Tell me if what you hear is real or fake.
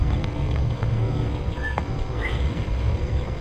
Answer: fake